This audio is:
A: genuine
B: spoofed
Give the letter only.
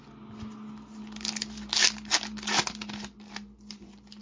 A